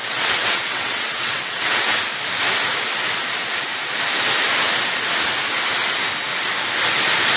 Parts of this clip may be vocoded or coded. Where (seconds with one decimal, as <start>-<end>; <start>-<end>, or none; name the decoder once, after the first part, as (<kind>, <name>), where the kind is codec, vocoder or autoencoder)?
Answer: 0.0-2.0 (vocoder, WaveNeXt)